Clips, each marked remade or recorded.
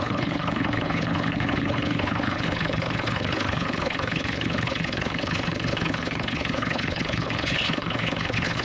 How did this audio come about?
remade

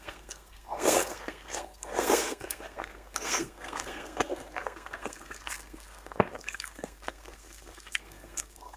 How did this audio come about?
remade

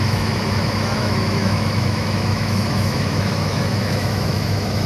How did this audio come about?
remade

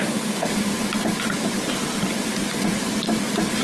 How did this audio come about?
recorded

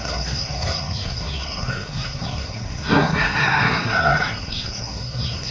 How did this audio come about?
remade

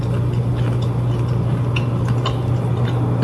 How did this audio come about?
recorded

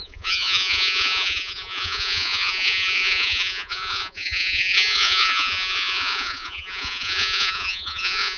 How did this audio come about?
remade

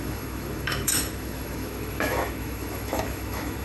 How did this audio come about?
remade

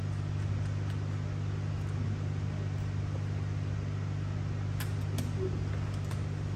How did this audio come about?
recorded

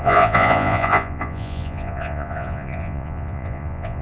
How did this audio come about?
remade